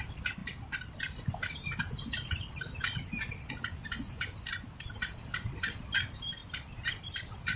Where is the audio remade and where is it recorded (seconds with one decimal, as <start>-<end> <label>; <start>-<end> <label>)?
0.0-6.4 remade; 6.4-7.0 recorded; 7.0-7.6 remade